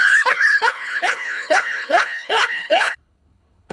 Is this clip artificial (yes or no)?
yes